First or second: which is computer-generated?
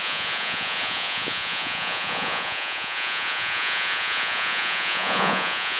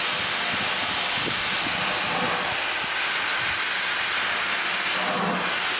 first